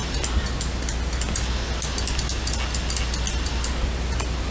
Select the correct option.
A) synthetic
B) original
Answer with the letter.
B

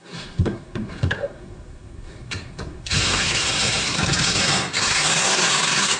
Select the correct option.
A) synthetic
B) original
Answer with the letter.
A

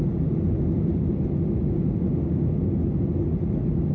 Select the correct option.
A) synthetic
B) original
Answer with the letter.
B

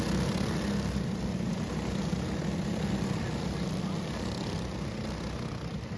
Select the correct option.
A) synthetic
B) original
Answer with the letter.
B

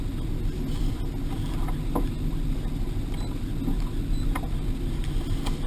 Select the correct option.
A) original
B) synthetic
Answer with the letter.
A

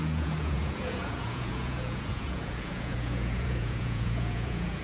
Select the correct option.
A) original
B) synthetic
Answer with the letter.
B